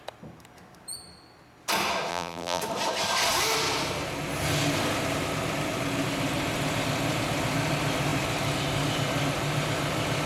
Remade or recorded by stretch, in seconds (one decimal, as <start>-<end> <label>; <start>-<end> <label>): 0.0-2.1 recorded; 2.1-2.6 remade; 2.6-10.3 recorded